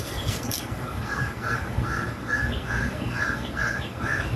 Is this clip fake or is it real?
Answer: fake